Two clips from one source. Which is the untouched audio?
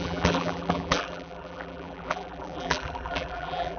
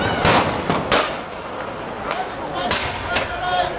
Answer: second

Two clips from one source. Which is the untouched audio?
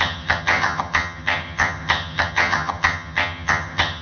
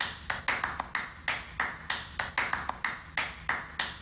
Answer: second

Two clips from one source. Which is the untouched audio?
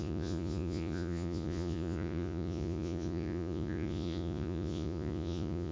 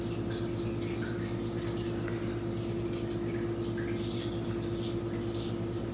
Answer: second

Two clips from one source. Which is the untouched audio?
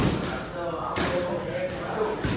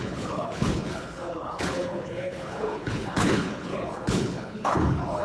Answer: first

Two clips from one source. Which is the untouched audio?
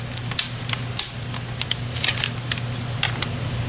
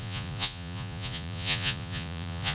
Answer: first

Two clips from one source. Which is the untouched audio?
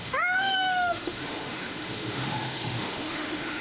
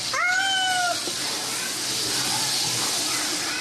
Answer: second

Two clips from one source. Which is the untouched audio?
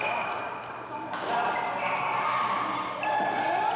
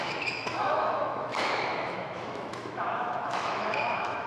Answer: first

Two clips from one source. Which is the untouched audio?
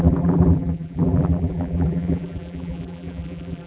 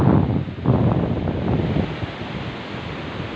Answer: second